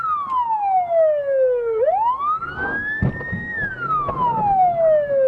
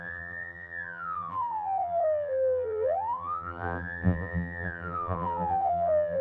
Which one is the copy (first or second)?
second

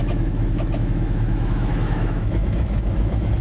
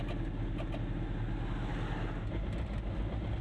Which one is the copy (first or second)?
first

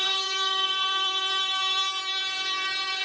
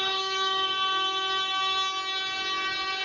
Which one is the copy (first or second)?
first